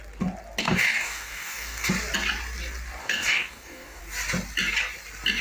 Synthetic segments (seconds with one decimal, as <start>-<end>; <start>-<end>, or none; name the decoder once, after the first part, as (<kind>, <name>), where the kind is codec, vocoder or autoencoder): 0.6-1.9 (codec, DAC); 3.0-4.0